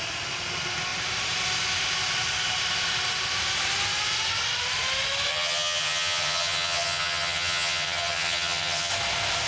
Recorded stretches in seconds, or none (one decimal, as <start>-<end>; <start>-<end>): 0.0-5.3; 8.9-9.5